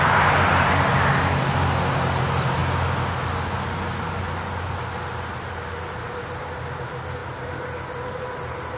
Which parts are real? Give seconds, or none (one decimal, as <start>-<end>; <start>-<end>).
0.0-8.8